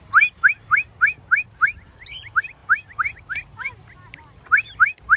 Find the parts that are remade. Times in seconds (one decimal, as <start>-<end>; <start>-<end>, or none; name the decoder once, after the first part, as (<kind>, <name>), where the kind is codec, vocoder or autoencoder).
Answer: none